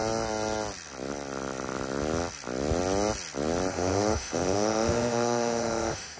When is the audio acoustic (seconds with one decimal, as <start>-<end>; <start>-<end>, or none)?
0.0-3.7